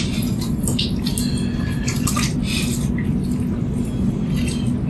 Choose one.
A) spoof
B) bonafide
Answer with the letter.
B